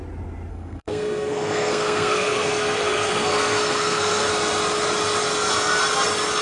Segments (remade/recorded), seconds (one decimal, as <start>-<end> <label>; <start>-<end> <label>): 0.0-0.5 recorded; 0.5-4.3 remade; 4.3-6.4 recorded